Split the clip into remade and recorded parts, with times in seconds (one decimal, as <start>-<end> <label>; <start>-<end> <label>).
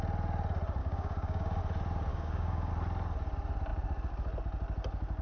0.0-0.8 recorded; 0.8-1.6 remade; 1.6-2.1 recorded; 2.1-2.7 remade; 2.7-5.2 recorded